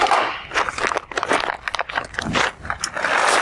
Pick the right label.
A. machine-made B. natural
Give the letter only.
B